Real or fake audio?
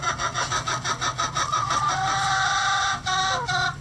real